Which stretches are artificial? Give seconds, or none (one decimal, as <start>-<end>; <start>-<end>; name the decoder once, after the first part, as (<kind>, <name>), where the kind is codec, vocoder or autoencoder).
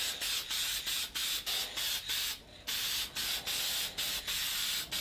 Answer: none